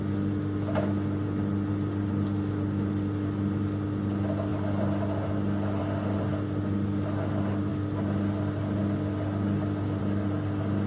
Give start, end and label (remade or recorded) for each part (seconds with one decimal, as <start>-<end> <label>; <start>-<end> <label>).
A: 0.0-10.9 recorded

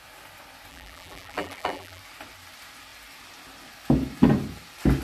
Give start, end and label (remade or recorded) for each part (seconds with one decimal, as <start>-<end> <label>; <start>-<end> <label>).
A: 0.0-0.7 recorded; 0.7-2.0 remade; 2.0-5.0 recorded

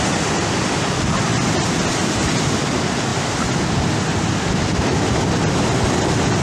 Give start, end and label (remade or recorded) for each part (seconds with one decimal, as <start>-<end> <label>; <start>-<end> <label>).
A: 0.0-6.4 recorded

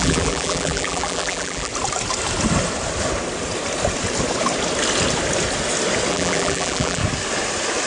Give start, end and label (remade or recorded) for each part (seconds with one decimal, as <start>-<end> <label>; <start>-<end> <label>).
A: 0.0-1.7 remade; 1.7-6.1 recorded; 6.1-7.0 remade; 7.0-7.9 recorded

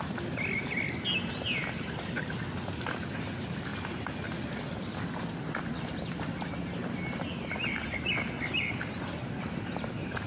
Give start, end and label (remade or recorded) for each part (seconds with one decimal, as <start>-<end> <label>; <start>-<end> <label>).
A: 0.0-10.3 recorded

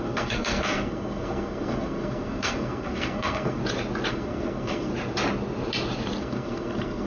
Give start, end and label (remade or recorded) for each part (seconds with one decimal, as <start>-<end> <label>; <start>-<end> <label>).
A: 0.0-3.6 remade; 3.6-4.1 recorded; 4.1-4.9 remade; 4.9-6.2 recorded; 6.2-7.1 remade

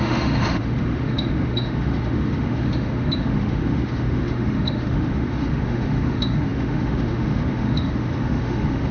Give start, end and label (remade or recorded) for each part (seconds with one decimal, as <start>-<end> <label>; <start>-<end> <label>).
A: 0.0-8.9 remade

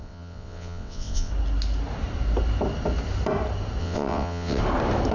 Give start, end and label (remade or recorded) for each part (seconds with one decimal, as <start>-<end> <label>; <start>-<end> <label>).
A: 0.0-1.3 remade; 1.3-3.8 recorded; 3.8-4.6 remade; 4.6-5.1 recorded